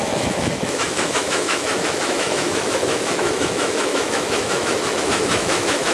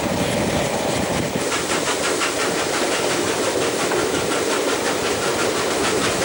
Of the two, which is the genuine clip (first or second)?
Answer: second